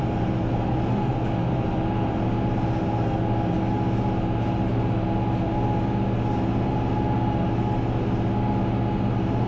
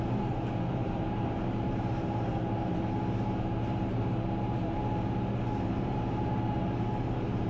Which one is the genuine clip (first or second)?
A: first